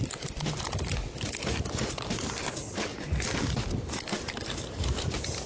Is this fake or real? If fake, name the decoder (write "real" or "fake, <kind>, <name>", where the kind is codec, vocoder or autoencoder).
real